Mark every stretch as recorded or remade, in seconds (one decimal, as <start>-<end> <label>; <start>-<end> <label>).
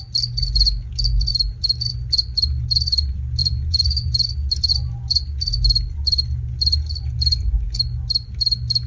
0.0-3.4 recorded; 3.4-4.3 remade; 4.3-8.9 recorded